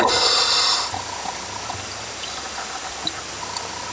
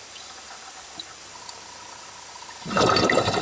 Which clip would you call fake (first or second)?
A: second